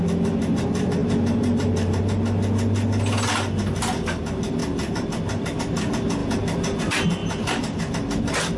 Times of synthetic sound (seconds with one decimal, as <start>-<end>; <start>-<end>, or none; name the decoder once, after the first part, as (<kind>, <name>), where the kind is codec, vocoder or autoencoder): 1.0-2.0 (vocoder, BigVGAN v2)